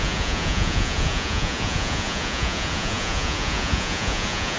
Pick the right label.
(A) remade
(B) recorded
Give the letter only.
A